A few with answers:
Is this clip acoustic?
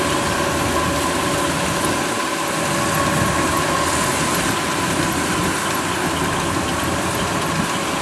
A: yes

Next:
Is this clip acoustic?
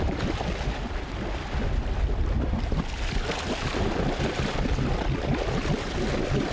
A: yes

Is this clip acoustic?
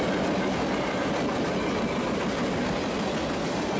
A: yes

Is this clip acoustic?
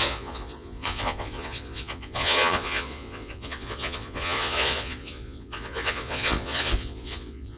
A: no